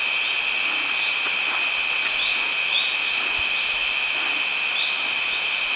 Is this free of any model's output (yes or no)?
yes